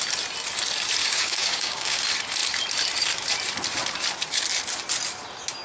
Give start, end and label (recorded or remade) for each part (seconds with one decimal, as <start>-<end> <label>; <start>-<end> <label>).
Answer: 0.0-1.0 recorded; 1.0-2.0 remade; 2.0-5.6 recorded